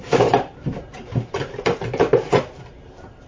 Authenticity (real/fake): fake